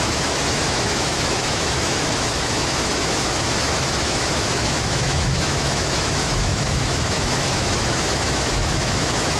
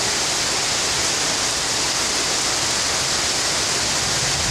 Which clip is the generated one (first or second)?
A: first